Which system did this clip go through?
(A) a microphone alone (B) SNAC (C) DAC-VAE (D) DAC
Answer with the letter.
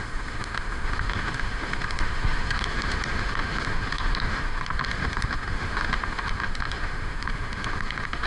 C